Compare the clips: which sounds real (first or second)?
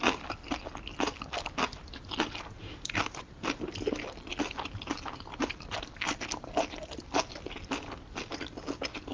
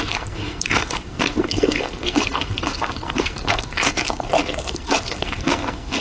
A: first